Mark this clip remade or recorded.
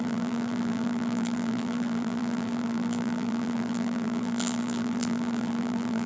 remade